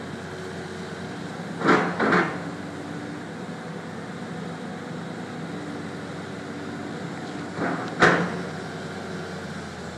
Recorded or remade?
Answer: recorded